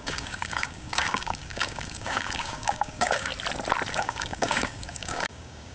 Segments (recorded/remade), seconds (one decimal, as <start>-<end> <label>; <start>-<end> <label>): 0.0-3.3 remade; 3.3-3.9 recorded; 3.9-5.7 remade